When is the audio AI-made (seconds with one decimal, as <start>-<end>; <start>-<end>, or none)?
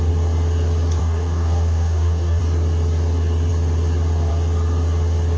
1.0-2.4